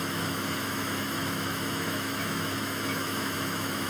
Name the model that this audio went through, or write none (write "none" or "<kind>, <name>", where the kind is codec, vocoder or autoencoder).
autoencoder, DAC-VAE